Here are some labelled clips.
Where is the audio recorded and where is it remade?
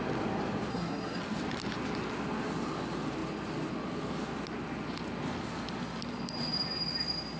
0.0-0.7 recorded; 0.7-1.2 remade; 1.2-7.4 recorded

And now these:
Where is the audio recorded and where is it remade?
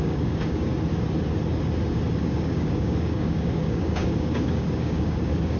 0.0-0.7 remade; 0.7-2.2 recorded; 2.2-5.6 remade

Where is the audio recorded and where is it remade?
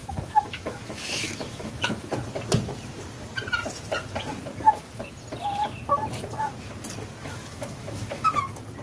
0.0-2.1 remade; 2.1-7.2 recorded; 7.2-8.4 remade; 8.4-8.8 recorded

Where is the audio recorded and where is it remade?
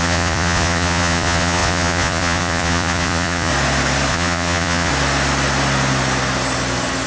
0.0-3.5 remade; 3.5-4.1 recorded; 4.1-4.9 remade; 4.9-7.1 recorded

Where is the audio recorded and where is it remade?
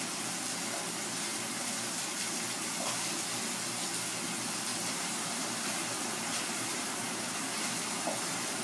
0.0-1.3 recorded; 1.3-2.2 remade; 2.2-4.7 recorded; 4.7-7.2 remade; 7.2-8.6 recorded